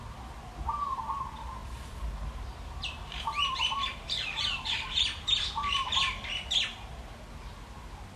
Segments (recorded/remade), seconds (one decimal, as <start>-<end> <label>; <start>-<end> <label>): 0.0-1.6 recorded; 1.6-6.5 remade; 6.5-8.2 recorded